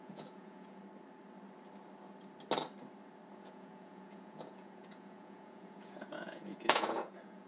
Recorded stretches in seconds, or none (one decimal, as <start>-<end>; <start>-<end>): 0.8-3.3

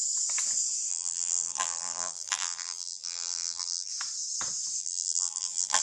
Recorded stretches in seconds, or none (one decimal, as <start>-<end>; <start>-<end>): 0.0-0.9; 3.9-4.8

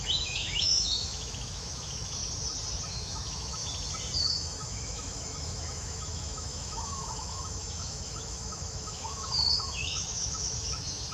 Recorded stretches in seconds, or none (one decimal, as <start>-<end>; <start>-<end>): 2.2-2.9; 3.6-4.2

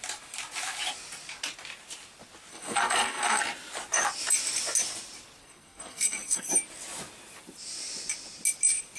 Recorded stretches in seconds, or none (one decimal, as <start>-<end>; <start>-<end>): 0.0-2.5; 3.4-5.4; 6.5-9.0

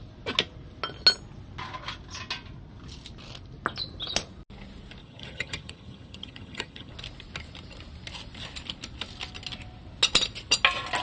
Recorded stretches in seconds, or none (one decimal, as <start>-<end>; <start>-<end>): 0.0-5.0; 6.9-11.0

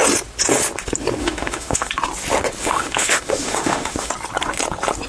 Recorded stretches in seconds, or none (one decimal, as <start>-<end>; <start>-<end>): 0.0-1.2; 1.9-2.6; 4.1-5.1